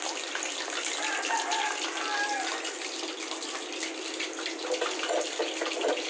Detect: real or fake real